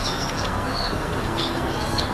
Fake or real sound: fake